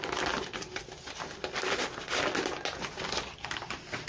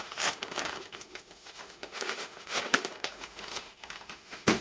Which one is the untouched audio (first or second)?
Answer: first